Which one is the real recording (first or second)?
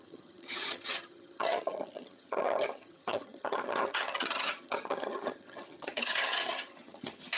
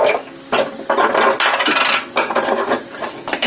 second